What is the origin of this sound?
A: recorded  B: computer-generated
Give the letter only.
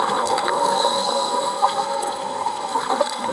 B